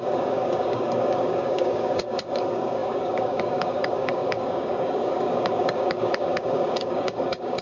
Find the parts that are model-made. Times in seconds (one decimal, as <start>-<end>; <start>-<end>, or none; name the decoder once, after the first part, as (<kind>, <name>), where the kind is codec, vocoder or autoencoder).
0.0-7.6 (codec, DAC)